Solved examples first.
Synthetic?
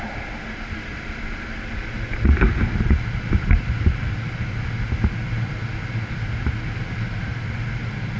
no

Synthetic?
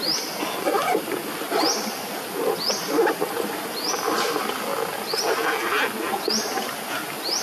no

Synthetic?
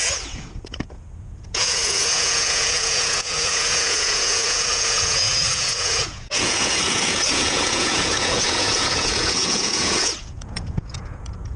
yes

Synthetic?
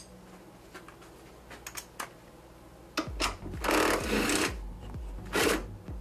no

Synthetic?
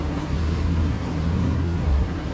yes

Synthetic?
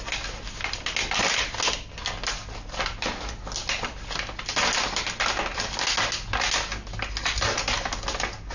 no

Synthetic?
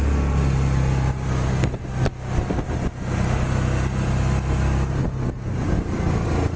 no